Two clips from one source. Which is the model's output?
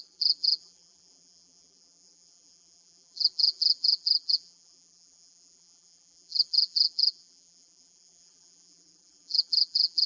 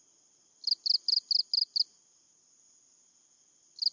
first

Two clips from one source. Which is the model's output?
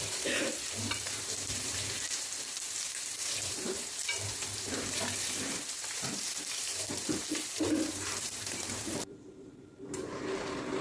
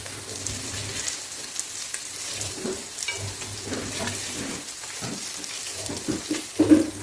first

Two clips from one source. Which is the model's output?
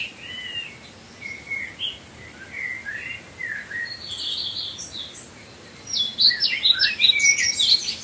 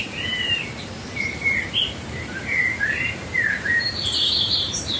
second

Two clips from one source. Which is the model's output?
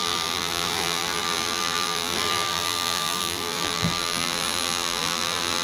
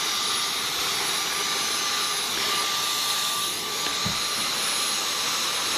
first